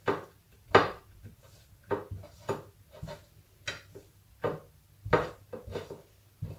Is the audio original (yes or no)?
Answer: yes